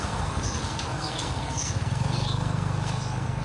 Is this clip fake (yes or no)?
yes